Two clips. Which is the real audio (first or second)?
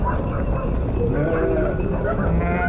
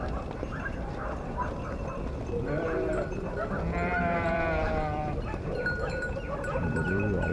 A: first